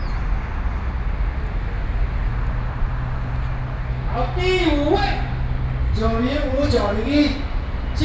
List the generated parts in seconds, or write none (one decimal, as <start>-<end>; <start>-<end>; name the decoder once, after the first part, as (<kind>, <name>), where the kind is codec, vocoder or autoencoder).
none